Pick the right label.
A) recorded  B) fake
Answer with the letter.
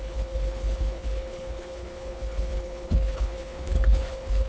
B